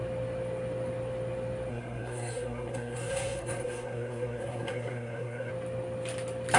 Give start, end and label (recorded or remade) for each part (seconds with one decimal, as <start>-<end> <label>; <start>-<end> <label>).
0.0-1.7 recorded; 1.7-5.5 remade; 5.5-6.6 recorded